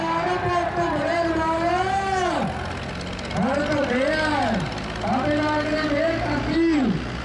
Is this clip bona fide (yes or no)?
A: yes